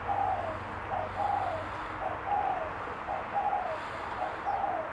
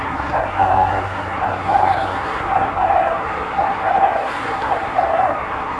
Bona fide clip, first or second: first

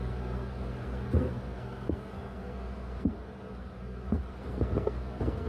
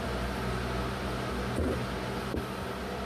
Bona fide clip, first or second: second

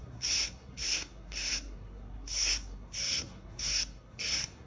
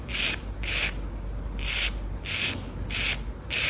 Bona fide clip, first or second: second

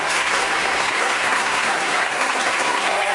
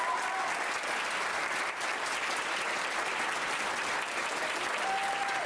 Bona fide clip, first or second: second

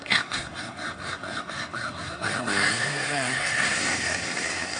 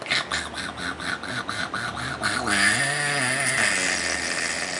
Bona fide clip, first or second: second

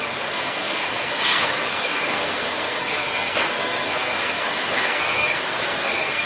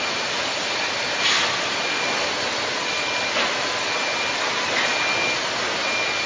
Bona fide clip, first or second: second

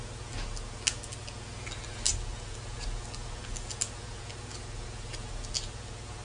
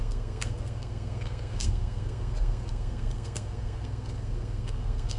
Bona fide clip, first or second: first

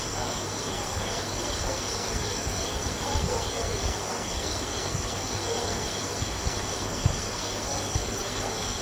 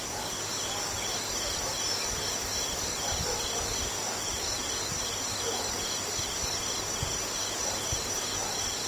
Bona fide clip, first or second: second